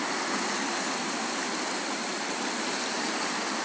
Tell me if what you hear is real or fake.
real